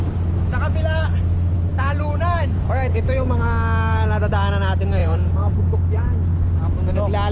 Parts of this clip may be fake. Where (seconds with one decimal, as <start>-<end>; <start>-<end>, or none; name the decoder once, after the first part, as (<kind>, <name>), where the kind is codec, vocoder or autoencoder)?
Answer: 5.0-5.6 (vocoder, Vocos)